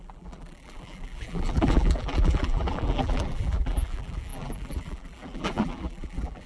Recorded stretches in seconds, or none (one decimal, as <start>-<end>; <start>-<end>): none

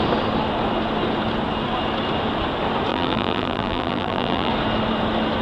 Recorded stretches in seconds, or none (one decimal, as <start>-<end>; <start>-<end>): 0.0-2.9; 4.5-5.4

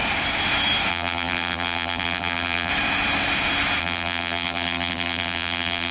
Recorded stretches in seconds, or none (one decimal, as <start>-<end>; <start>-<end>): 0.0-0.9; 2.7-3.8

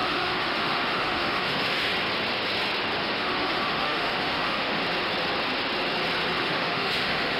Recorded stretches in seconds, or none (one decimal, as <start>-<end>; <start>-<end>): 1.9-3.0; 4.8-6.4

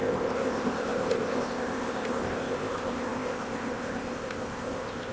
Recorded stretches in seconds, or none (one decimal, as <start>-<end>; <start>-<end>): none

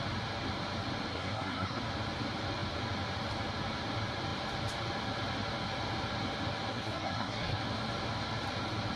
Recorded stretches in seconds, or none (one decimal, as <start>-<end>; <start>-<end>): 0.0-1.1; 1.8-6.7; 7.6-9.0

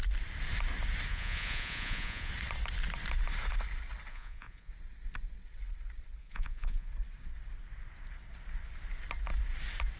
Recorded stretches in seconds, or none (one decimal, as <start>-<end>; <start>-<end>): 0.0-1.1; 2.3-4.1; 4.7-6.2; 6.9-10.0

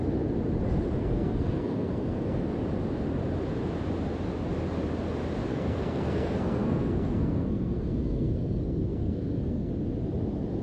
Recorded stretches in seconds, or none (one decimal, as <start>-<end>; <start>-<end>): 0.0-1.0; 2.5-5.5; 9.7-10.6